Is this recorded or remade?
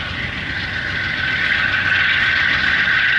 recorded